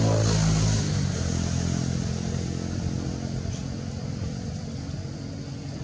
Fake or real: real